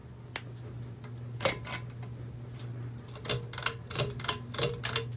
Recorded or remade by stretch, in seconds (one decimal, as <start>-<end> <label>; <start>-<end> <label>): 0.0-5.2 recorded